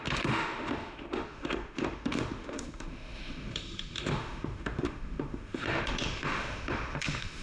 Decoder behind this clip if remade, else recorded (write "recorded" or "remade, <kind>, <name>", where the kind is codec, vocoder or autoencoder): remade, autoencoder, DAC-VAE